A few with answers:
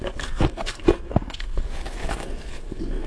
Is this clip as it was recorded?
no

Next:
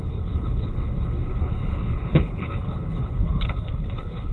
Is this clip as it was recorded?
no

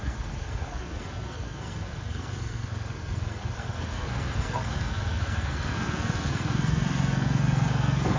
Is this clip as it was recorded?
no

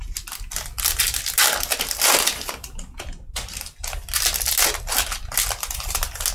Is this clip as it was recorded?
yes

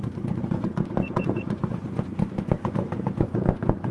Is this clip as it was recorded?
no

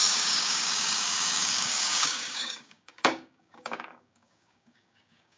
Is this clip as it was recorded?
no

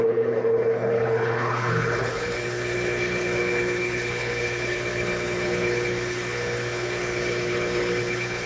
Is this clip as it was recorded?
no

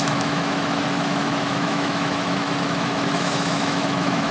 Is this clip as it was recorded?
no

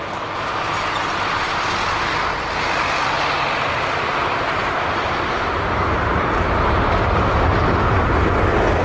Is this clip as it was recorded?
yes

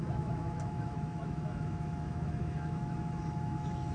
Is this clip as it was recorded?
no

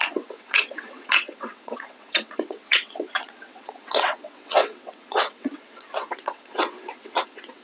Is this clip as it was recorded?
no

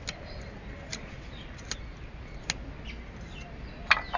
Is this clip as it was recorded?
yes